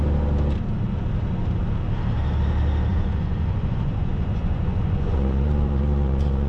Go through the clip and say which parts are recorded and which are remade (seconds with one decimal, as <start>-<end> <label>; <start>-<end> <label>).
0.0-2.9 recorded; 2.9-6.5 remade

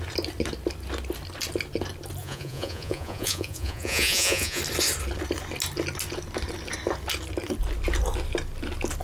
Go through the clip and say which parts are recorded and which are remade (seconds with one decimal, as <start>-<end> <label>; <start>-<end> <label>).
0.0-2.2 recorded; 2.2-4.6 remade; 4.6-9.0 recorded

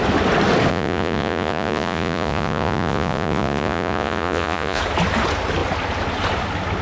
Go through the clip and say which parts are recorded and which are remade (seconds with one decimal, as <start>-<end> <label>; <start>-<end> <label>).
0.0-0.7 recorded; 0.7-4.8 remade; 4.8-6.8 recorded

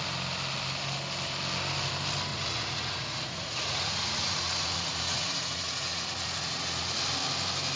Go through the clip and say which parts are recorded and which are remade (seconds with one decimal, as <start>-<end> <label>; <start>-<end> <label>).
0.0-2.3 recorded; 2.3-7.0 remade; 7.0-7.8 recorded

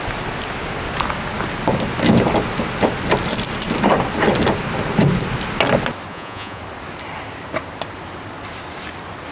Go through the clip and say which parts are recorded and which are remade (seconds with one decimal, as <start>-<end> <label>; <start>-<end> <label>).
0.0-6.1 recorded; 6.1-6.6 remade; 6.6-9.3 recorded

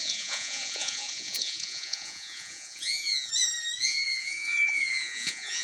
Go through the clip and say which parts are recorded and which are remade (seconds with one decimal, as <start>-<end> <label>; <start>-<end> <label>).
0.0-3.3 remade; 3.3-3.8 recorded; 3.8-5.6 remade

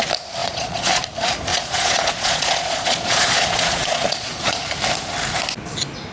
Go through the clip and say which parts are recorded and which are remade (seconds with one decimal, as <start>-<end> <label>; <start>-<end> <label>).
0.0-0.4 recorded; 0.4-1.0 remade; 1.0-1.5 recorded; 1.5-4.6 remade; 4.6-6.1 recorded

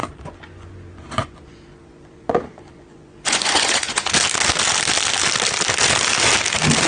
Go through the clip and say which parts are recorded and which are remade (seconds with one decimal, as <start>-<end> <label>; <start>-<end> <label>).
0.0-4.1 remade; 4.1-6.9 recorded